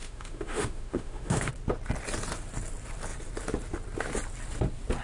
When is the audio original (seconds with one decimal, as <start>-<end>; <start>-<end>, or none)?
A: 1.5-5.0